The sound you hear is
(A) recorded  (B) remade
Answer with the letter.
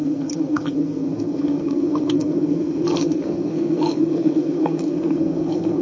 B